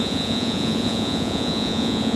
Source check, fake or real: fake